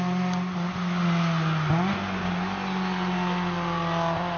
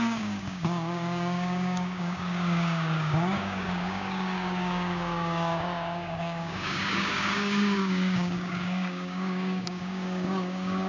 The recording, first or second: first